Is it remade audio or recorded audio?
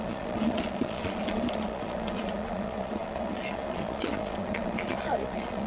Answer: remade